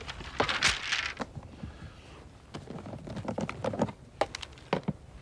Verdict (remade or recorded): recorded